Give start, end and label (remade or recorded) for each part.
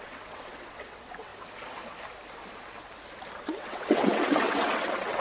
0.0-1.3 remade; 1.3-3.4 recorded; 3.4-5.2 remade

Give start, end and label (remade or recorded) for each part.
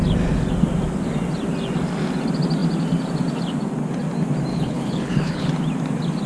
0.0-4.5 recorded; 4.5-5.5 remade; 5.5-6.3 recorded